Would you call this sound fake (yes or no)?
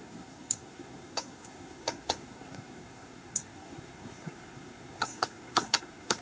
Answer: yes